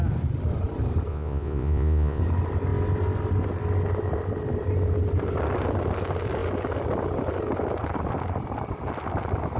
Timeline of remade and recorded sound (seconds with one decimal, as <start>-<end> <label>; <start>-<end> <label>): 0.0-1.1 recorded; 1.1-2.2 remade; 2.2-9.6 recorded